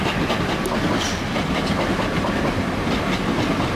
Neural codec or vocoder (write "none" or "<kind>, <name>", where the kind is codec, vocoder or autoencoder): none